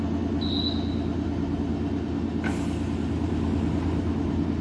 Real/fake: real